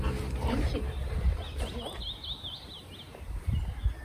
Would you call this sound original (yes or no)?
yes